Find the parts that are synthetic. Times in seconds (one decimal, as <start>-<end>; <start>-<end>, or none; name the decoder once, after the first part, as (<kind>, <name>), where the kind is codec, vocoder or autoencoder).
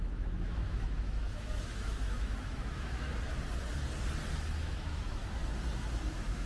0.0-3.1 (autoencoder, DAC-VAE); 4.6-5.4; 6.1-6.5